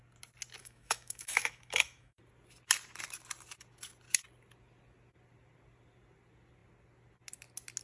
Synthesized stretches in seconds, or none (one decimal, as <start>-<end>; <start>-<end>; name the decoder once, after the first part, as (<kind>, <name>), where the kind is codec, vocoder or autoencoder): 0.6-2.2 (autoencoder, DAC-VAE)